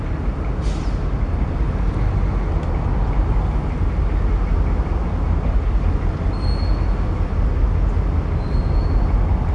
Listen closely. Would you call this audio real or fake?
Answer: real